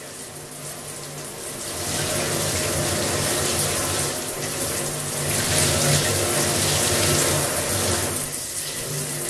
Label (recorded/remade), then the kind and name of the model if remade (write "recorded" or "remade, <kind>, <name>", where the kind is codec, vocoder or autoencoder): recorded